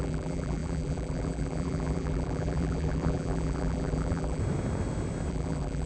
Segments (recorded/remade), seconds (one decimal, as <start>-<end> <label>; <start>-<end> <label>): 0.0-4.4 remade; 4.4-5.3 recorded; 5.3-5.9 remade